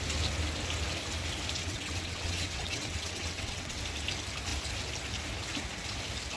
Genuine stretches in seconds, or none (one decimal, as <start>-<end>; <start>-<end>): 0.0-1.6; 3.8-6.4